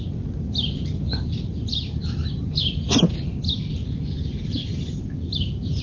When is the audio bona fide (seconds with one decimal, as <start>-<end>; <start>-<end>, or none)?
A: 0.0-5.8